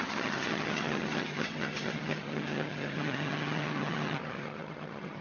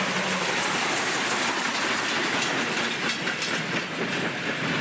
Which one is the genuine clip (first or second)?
second